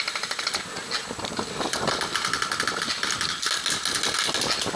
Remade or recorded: recorded